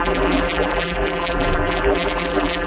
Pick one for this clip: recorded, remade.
remade